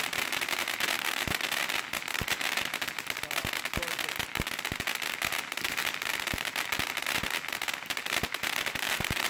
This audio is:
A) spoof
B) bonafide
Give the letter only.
A